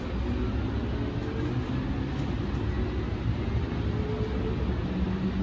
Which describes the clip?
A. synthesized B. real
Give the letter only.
B